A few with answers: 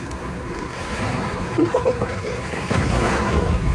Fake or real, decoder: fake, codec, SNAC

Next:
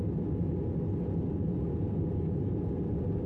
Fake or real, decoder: real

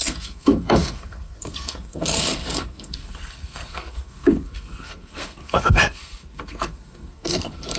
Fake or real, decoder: fake, codec, SNAC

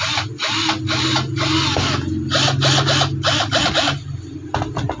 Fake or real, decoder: real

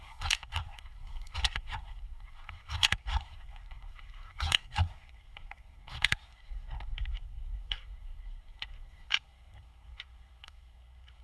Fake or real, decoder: fake, codec, SNAC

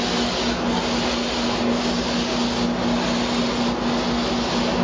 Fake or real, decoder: real